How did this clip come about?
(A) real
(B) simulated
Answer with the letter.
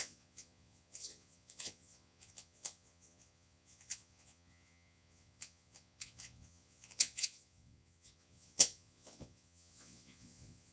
B